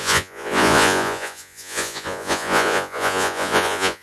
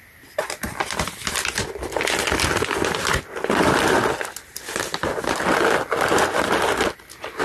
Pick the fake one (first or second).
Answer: first